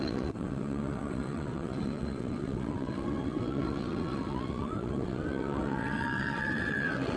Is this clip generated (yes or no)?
yes